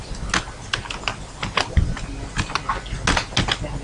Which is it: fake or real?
real